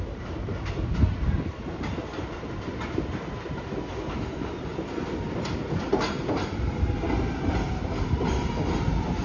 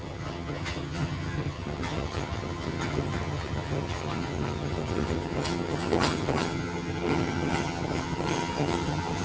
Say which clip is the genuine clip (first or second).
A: first